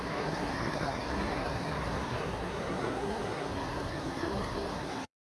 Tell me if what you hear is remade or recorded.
remade